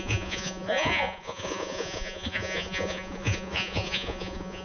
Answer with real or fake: fake